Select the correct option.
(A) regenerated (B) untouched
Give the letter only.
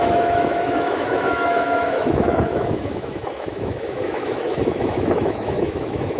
A